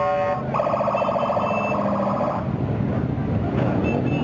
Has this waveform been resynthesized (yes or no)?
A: no